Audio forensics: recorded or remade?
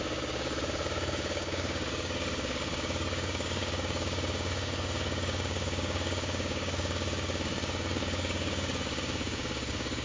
remade